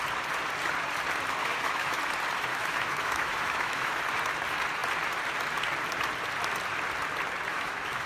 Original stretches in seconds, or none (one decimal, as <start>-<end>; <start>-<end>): 0.0-1.4; 2.0-2.5; 4.0-7.5